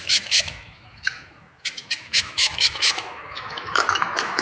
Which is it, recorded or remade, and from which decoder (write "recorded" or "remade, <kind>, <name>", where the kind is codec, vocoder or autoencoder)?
remade, autoencoder, DAC-VAE